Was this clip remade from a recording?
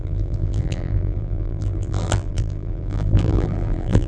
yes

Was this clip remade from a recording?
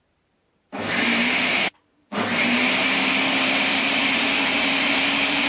yes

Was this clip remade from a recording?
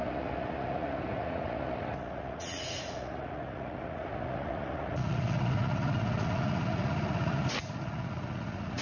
yes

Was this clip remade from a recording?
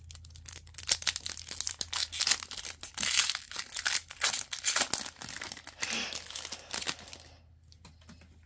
no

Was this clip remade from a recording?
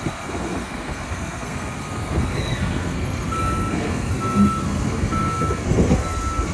yes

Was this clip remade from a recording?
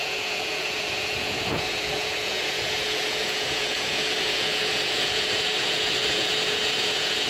yes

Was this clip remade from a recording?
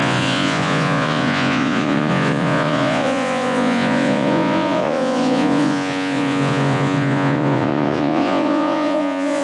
yes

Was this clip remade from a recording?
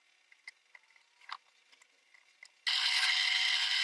no